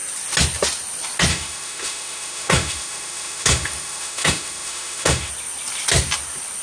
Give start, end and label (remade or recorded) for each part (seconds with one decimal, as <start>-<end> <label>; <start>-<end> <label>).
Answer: 0.0-1.3 recorded; 1.3-5.3 remade; 5.3-6.6 recorded